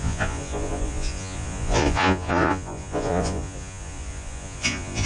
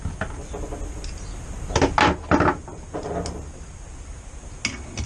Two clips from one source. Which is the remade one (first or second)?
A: first